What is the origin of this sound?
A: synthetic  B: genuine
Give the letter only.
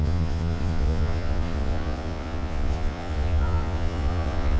A